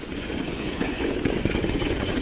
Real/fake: fake